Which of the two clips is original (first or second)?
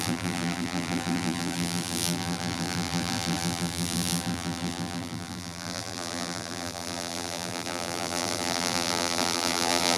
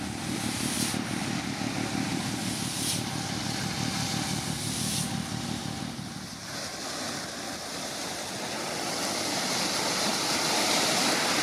second